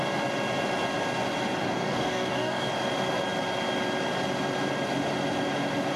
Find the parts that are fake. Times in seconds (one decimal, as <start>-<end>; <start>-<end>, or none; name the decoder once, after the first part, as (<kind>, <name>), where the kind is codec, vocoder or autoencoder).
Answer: 1.7-2.7 (codec, DAC)